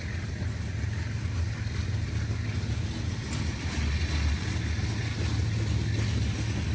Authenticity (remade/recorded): recorded